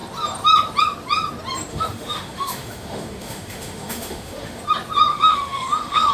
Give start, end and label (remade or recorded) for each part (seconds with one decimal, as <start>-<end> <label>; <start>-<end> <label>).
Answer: 0.0-1.7 recorded; 1.7-4.6 remade; 4.6-5.1 recorded; 5.1-6.1 remade